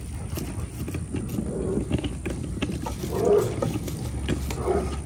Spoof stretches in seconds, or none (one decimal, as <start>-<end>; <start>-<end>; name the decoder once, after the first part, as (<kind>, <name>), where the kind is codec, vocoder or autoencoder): none